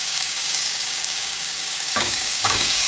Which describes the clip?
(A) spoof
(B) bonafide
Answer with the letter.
A